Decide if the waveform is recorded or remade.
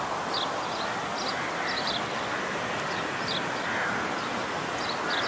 recorded